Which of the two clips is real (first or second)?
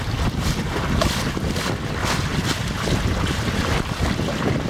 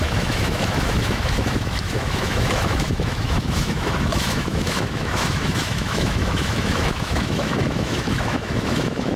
first